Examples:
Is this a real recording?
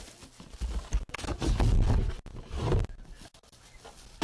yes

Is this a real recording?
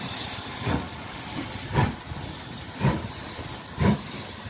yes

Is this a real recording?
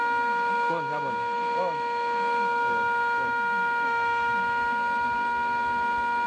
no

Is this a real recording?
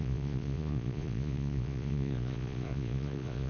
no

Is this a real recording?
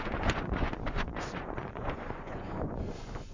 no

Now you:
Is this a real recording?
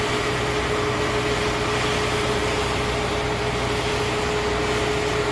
yes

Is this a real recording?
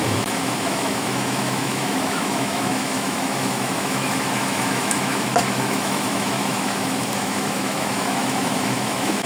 no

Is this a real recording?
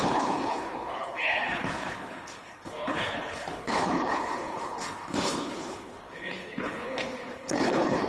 no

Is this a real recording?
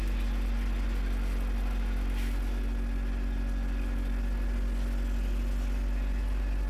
yes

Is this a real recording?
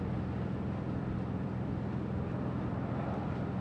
yes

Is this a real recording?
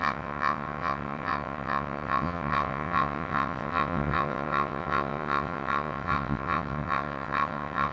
no